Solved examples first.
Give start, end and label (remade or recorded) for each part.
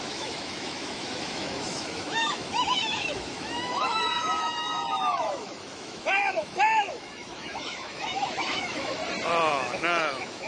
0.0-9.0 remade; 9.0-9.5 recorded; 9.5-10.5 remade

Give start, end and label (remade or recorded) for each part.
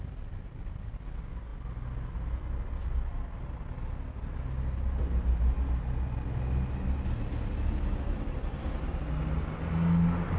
0.0-10.4 recorded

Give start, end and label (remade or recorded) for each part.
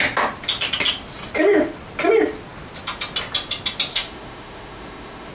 0.0-3.9 recorded; 3.9-5.3 remade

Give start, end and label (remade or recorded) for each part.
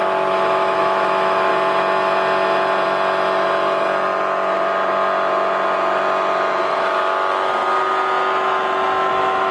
0.0-1.5 remade; 1.5-6.6 recorded; 6.6-7.6 remade; 7.6-9.1 recorded; 9.1-9.5 remade